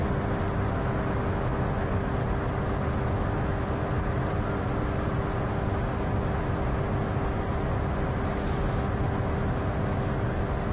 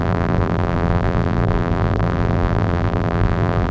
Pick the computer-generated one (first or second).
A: second